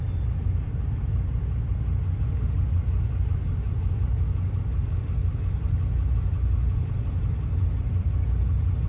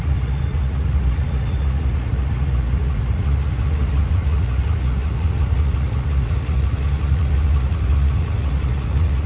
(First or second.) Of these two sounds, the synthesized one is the second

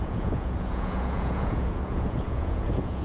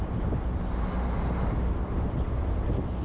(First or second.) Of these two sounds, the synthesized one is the first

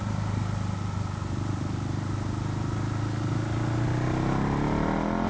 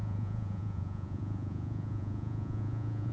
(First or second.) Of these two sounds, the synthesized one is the second